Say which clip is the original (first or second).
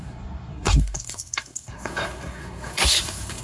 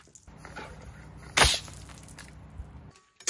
second